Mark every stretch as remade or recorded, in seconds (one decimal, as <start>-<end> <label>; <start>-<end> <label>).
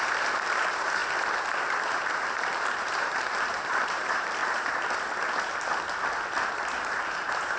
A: 0.0-1.0 remade; 1.0-1.9 recorded; 1.9-4.4 remade; 4.4-6.5 recorded; 6.5-7.6 remade